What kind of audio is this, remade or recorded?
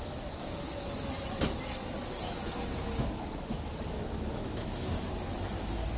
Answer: remade